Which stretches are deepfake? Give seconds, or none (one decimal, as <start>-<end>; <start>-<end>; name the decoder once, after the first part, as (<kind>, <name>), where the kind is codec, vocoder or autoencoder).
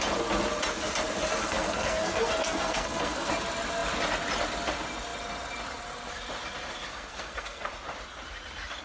1.4-3.3 (codec, SNAC); 6.9-7.7